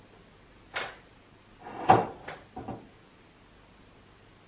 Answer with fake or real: real